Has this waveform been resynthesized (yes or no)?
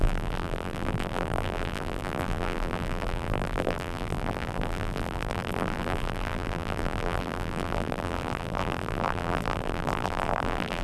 yes